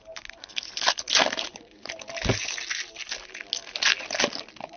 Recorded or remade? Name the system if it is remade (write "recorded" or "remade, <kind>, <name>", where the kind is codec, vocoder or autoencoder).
recorded